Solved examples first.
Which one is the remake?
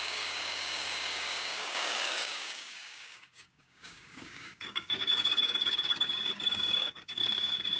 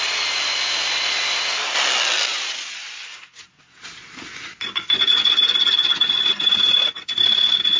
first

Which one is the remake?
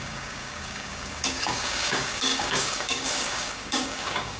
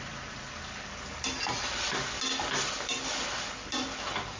first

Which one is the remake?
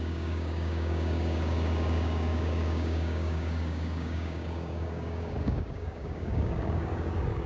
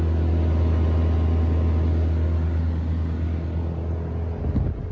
first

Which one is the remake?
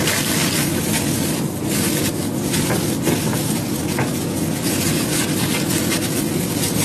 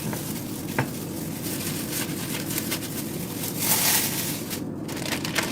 first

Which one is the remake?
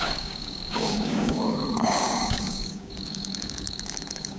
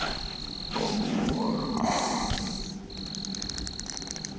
first